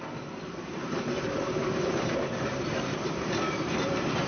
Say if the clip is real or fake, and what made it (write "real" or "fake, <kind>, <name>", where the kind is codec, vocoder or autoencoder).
fake, vocoder, BigVGAN v2